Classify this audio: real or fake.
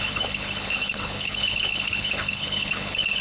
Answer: fake